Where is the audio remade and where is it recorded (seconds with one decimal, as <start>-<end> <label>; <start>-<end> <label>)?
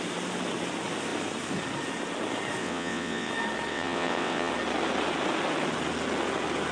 0.0-2.6 recorded; 2.6-3.3 remade; 3.3-3.7 recorded; 3.7-4.5 remade; 4.5-6.7 recorded